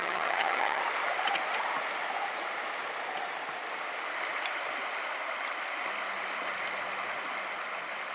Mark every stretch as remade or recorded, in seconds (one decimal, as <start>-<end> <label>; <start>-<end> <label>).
0.0-0.8 remade; 0.8-8.1 recorded